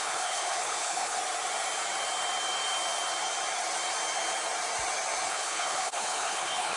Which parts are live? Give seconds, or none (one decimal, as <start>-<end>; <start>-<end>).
1.2-5.3